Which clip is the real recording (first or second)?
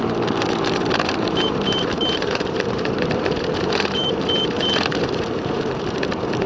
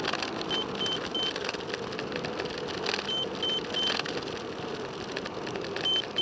second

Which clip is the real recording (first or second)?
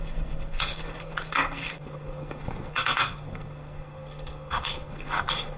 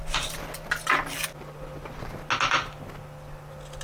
second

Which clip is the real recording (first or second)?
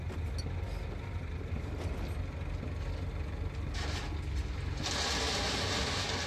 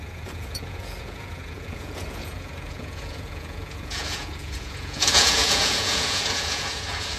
first